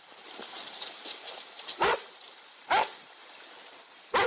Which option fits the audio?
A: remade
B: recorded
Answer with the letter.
A